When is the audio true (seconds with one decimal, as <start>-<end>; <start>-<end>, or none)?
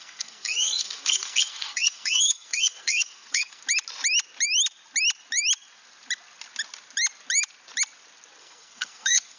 3.6-8.4